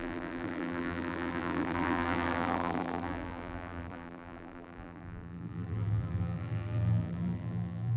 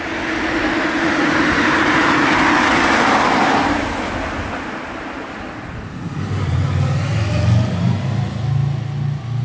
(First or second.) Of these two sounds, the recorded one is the second